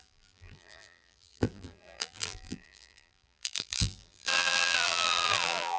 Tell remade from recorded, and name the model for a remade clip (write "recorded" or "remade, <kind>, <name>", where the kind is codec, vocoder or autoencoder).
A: remade, vocoder, BigVGAN v2